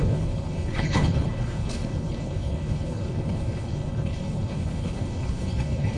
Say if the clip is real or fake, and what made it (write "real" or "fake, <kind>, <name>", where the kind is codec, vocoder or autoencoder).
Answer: fake, codec, HILCodec